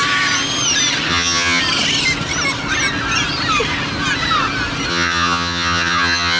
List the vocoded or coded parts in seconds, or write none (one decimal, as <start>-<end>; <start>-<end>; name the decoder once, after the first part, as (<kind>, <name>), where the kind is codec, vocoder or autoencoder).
1.1-1.6 (vocoder, HiFi-GAN); 4.9-6.4